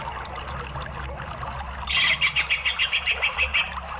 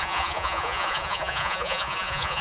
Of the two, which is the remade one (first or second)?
second